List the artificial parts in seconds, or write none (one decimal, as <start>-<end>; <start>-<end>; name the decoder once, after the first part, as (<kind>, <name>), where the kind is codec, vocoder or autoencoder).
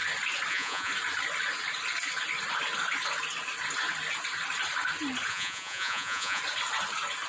0.5-0.9 (vocoder, Vocos); 5.3-6.4